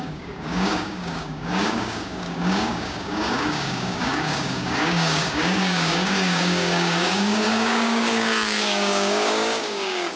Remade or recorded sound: remade